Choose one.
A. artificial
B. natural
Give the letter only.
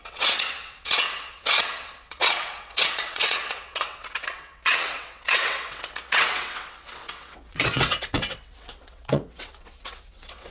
A